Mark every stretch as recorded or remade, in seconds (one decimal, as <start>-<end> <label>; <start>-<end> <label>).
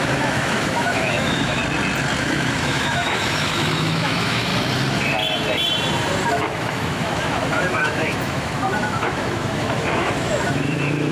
0.0-1.6 remade; 1.6-2.2 recorded; 2.2-4.5 remade; 4.5-6.3 recorded; 6.3-11.1 remade